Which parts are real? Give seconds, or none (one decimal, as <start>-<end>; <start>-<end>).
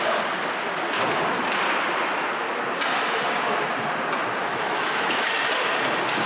0.0-4.5; 5.3-6.3